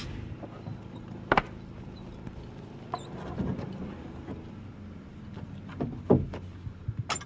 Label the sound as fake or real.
real